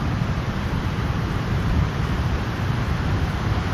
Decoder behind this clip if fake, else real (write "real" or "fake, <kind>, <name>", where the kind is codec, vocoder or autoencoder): fake, vocoder, BigVGAN v2